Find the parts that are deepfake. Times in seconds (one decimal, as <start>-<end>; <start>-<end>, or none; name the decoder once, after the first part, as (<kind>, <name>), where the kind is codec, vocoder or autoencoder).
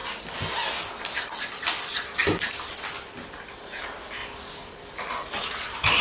3.6-4.2 (vocoder, BigVGAN v2); 5.1-6.0